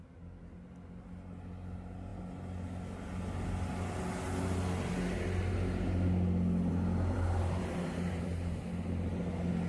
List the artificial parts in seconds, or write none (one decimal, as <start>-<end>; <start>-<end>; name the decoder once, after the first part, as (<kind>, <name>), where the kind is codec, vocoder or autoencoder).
6.7-8.6 (vocoder, BigVGAN v2)